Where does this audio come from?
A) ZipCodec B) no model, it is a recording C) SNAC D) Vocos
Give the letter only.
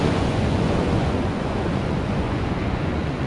D